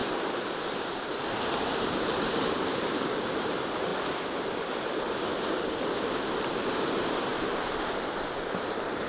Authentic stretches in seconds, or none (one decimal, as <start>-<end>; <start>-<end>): 0.0-0.6; 3.9-6.5